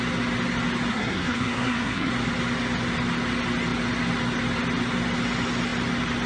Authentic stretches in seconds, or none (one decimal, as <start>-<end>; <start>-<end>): 0.0-0.9; 2.1-6.3